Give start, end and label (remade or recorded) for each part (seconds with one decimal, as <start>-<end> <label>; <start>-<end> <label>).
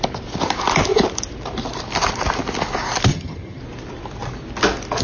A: 0.0-3.1 recorded; 3.1-3.6 remade; 3.6-5.0 recorded